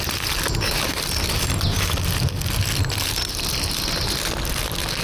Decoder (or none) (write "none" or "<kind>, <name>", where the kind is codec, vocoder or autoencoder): none